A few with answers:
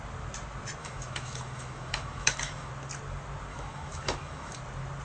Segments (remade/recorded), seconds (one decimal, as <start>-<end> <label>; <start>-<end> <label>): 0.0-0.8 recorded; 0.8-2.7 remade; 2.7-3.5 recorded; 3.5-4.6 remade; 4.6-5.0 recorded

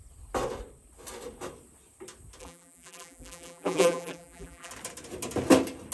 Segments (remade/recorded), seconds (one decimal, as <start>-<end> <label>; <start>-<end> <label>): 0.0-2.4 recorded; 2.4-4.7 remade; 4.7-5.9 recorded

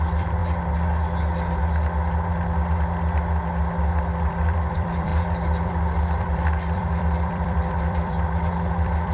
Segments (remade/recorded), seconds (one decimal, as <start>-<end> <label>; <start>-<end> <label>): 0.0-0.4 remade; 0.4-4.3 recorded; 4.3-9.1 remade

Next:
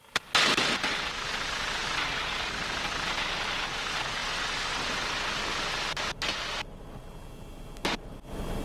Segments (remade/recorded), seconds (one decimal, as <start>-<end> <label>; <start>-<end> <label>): 0.0-8.6 recorded

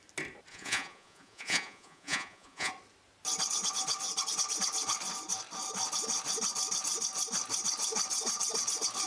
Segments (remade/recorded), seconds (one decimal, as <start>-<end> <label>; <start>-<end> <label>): 0.0-0.5 recorded; 0.5-2.7 remade; 2.7-9.1 recorded

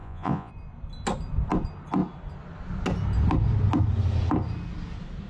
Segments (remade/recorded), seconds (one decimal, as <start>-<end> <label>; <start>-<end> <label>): 0.0-0.5 remade; 0.5-5.3 recorded

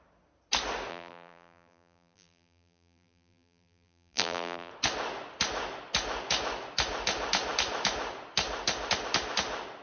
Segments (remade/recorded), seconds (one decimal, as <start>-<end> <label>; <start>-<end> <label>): 0.0-0.9 recorded; 0.9-4.7 remade; 4.7-9.8 recorded

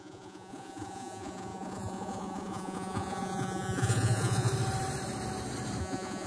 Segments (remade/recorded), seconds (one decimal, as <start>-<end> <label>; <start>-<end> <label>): 0.0-4.5 remade; 4.5-5.8 recorded; 5.8-6.3 remade